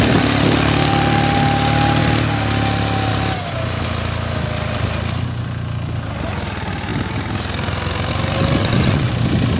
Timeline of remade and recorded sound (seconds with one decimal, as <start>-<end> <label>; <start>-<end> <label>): 0.0-8.6 recorded; 8.6-9.1 remade; 9.1-9.6 recorded